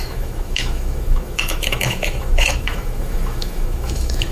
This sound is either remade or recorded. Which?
remade